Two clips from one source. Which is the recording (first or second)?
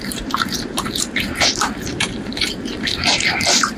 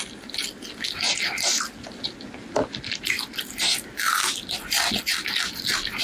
second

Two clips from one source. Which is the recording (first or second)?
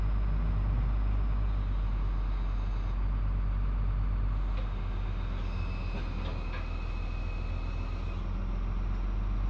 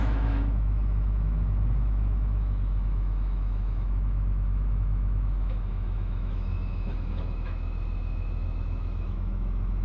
first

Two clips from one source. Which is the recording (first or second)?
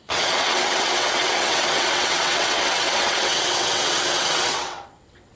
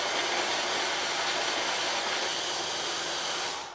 second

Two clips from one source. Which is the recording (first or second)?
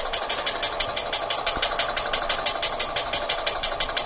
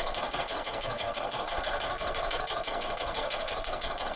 first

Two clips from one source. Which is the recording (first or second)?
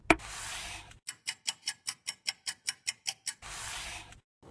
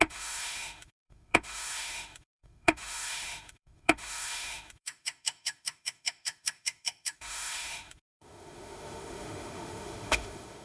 first